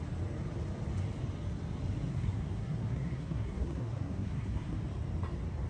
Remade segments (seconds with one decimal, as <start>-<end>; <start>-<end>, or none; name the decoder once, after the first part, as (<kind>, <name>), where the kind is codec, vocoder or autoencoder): 2.1-4.8 (codec, SNAC)